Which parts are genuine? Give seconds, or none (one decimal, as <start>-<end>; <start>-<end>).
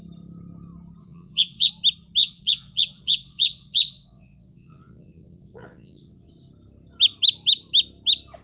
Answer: 0.0-1.0; 1.7-2.2; 6.3-8.4